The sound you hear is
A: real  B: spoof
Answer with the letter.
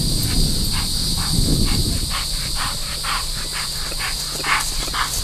A